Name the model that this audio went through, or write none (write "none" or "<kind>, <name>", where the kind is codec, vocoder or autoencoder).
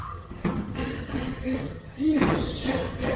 vocoder, HiFi-GAN